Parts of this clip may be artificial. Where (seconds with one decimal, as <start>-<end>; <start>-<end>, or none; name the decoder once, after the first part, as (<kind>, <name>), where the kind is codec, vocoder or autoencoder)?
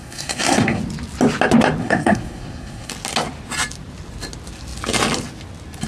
0.0-0.8 (codec, SNAC); 1.8-2.9